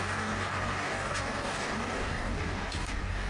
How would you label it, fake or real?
fake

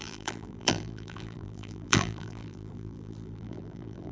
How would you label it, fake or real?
fake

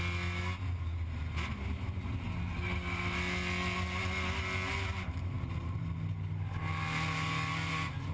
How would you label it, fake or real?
real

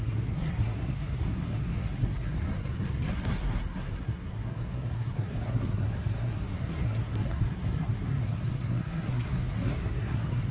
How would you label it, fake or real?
fake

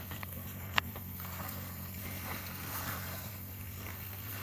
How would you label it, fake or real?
fake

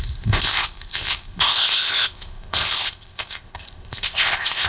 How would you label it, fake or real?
fake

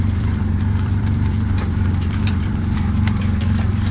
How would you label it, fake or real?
fake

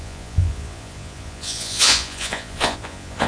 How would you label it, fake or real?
fake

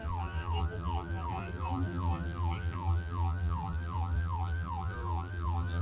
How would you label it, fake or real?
fake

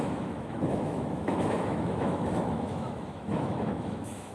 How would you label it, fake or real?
fake